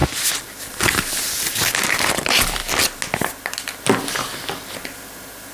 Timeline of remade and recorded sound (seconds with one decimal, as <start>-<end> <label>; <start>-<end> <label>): 0.0-1.8 recorded; 1.8-2.6 remade; 2.6-5.5 recorded